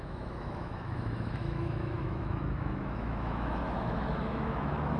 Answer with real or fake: fake